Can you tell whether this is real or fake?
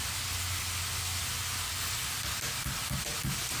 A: real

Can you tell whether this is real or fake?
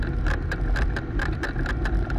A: fake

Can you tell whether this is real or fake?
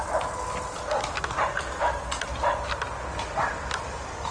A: real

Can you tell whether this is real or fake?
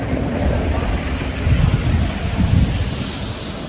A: real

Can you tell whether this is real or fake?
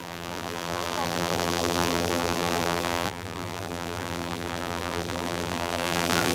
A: fake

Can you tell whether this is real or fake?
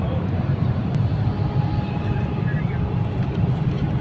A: real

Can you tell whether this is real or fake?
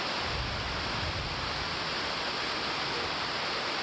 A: real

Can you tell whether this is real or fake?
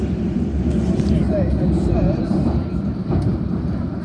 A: fake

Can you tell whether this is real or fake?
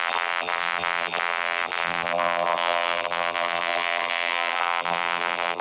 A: fake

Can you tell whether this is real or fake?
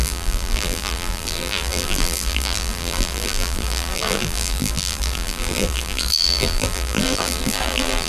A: fake